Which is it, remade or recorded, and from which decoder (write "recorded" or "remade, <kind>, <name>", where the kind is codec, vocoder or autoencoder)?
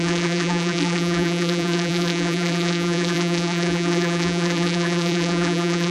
remade, vocoder, BigVGAN v2